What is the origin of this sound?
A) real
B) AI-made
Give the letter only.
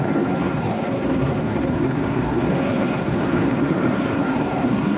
B